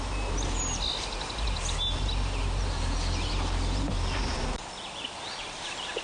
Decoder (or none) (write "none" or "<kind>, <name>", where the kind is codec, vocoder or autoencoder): none